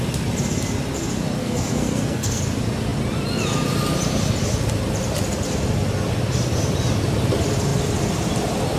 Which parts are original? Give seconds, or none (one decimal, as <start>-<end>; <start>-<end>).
0.0-1.4; 2.4-8.8